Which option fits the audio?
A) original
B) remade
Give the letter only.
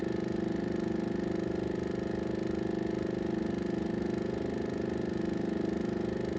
A